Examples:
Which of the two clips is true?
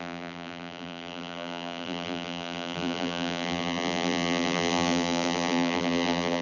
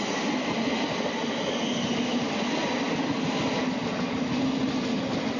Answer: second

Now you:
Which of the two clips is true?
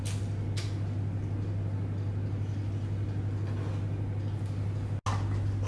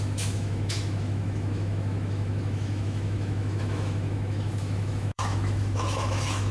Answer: first